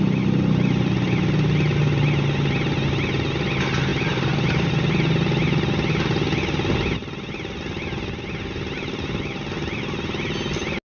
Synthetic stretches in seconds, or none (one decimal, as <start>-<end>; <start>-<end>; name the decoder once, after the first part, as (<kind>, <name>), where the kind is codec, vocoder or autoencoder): 3.9-4.7 (vocoder, BigVGAN v2)